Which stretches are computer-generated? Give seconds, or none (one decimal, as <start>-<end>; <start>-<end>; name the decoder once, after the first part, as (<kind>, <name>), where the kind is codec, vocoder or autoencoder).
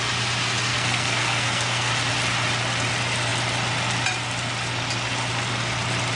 0.7-1.9 (codec, SNAC)